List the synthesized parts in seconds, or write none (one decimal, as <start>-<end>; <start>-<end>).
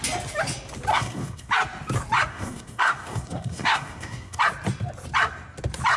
0.9-1.5; 2.3-4.4